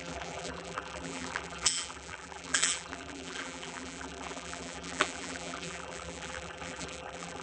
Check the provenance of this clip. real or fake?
fake